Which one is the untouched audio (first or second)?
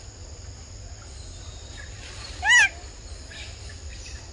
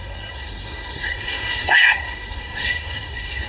first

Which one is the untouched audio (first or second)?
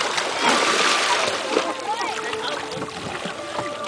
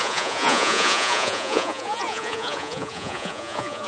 first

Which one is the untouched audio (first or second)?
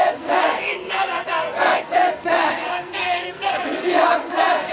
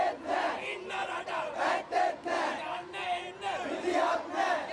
second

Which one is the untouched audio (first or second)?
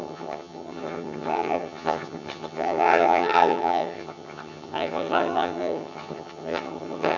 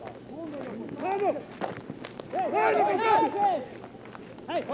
second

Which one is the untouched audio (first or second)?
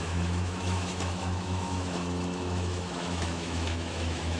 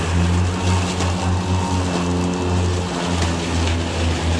second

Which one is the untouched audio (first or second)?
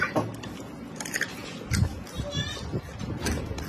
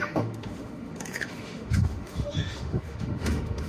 first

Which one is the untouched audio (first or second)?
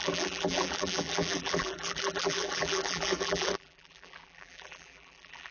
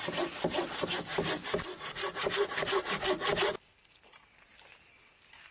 second